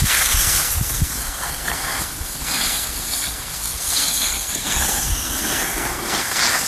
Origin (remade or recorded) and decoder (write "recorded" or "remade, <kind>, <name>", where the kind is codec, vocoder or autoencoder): remade, codec, SNAC